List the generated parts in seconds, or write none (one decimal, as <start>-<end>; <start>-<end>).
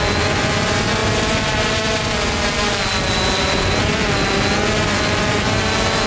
none